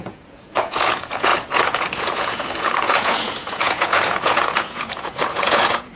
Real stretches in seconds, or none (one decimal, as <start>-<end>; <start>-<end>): none